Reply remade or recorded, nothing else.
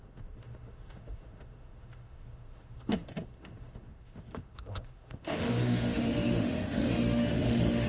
remade